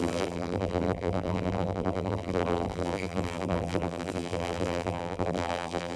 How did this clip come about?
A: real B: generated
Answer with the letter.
B